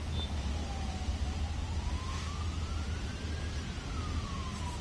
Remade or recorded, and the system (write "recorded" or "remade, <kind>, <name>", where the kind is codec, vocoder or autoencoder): recorded